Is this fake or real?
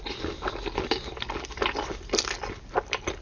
real